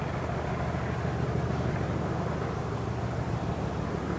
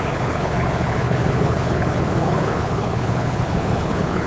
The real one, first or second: first